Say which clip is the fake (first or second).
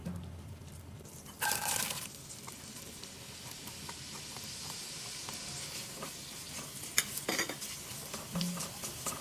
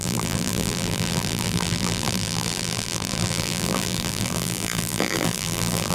second